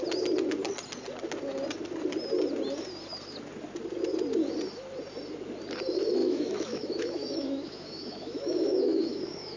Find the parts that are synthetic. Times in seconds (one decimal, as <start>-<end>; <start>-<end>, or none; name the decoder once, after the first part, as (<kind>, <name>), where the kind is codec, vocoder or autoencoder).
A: 6.2-9.6 (autoencoder, DAC-VAE)